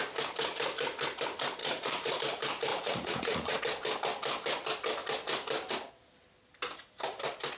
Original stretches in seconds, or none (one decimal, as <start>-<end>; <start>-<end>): 0.0-1.6; 2.2-2.7; 3.6-7.6